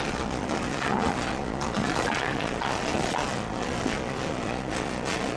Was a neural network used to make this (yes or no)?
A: yes